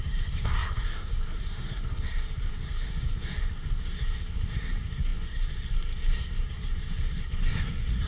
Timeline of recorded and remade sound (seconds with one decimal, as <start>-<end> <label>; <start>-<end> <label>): 0.0-8.1 remade